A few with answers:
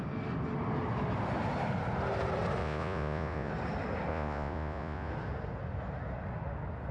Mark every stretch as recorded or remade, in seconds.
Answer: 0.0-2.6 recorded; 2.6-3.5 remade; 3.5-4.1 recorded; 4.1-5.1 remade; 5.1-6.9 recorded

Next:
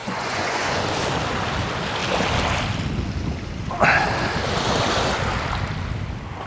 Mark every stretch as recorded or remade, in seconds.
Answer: 0.0-0.8 remade; 0.8-6.5 recorded

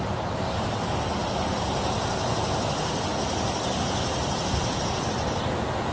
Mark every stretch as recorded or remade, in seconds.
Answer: 0.0-5.9 recorded